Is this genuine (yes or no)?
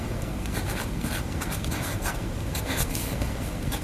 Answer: no